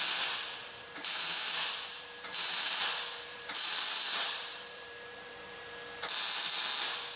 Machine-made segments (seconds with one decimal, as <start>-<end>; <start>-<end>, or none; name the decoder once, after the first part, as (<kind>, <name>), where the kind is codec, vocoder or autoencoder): 0.6-2.9 (vocoder, BigVGAN v2); 3.3-5.7